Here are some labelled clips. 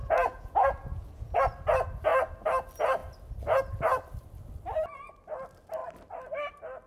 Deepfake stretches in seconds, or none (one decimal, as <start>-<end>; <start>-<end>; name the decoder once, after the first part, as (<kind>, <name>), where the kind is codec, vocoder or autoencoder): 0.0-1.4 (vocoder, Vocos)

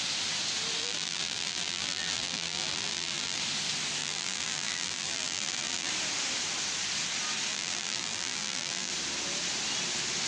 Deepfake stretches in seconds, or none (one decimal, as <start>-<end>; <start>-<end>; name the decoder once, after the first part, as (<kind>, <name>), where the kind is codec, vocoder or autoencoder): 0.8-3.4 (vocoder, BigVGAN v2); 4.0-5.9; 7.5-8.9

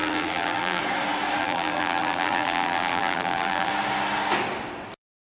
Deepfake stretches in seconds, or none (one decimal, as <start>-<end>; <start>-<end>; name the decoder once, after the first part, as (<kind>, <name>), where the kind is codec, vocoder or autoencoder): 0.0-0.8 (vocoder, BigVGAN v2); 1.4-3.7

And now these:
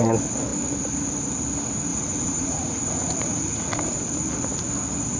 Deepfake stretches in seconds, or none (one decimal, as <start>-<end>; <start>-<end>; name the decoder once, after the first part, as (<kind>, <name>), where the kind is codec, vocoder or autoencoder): 1.9-3.9 (vocoder, Vocos)

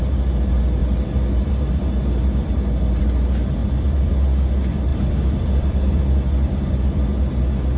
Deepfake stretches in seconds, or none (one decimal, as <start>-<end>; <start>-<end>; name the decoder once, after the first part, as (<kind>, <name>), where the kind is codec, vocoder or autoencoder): 3.6-4.1 (vocoder, BigVGAN v2); 4.9-6.0